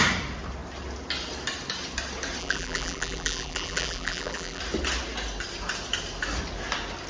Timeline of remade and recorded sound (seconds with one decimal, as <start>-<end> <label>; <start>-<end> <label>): 0.0-2.4 recorded; 2.4-4.6 remade; 4.6-7.1 recorded